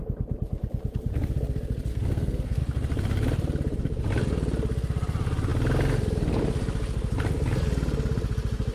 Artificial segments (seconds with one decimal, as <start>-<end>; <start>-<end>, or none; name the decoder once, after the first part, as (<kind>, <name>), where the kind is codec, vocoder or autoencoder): 1.9-2.6 (codec, SNAC)